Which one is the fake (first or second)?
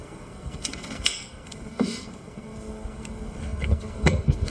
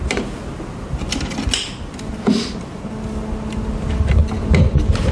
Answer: first